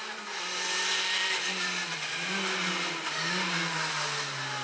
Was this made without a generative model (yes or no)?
yes